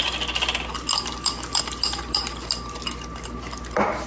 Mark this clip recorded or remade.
recorded